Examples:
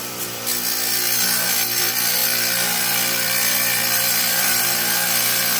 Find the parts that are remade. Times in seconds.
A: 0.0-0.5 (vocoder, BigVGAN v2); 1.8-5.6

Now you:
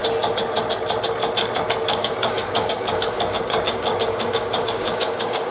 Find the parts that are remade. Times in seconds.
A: 2.0-5.5 (codec, DAC)

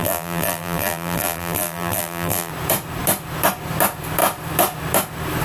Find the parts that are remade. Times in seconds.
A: 0.0-2.5 (vocoder, BigVGAN v2)

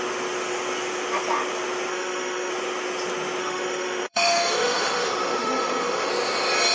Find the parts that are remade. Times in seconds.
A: 1.9-2.5 (autoencoder, DAC-VAE); 3.4-6.1